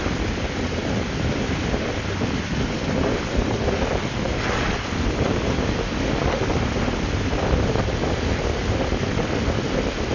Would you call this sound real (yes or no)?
yes